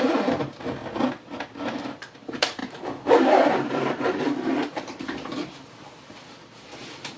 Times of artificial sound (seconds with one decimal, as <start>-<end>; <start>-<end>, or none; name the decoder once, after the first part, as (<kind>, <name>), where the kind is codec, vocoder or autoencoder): 0.0-0.8 (vocoder, BigVGAN v2); 1.8-7.2